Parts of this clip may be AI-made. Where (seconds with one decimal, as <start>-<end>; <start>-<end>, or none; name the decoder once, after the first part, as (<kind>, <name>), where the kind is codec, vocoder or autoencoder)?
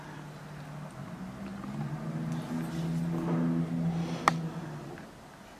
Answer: none